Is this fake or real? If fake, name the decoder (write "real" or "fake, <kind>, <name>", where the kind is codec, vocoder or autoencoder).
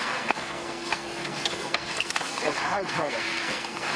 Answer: fake, codec, SNAC